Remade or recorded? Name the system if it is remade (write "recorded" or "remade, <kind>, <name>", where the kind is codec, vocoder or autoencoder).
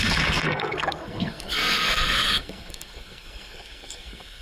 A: remade, codec, SNAC